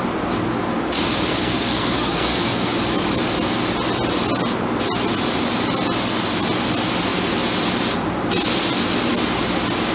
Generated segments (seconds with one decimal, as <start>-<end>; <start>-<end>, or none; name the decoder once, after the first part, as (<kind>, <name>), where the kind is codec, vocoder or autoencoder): 1.3-2.7 (codec, SNAC)